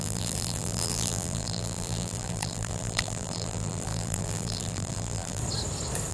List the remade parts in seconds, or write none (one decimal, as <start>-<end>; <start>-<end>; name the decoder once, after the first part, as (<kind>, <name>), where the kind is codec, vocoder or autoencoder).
0.0-5.4 (vocoder, BigVGAN v2)